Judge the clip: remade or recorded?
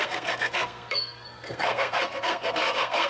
remade